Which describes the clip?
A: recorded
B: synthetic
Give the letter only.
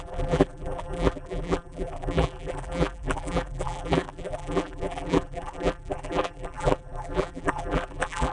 B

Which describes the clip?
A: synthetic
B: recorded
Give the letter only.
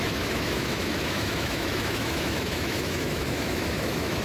A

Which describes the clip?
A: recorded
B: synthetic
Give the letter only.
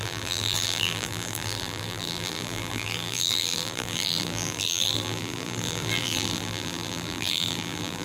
B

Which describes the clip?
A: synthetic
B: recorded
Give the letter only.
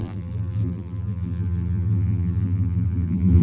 A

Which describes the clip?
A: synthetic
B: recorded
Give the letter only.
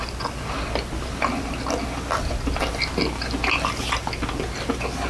B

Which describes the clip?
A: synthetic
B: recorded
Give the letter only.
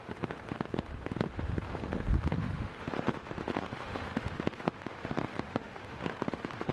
A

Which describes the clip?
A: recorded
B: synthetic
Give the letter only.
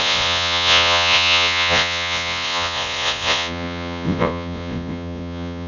B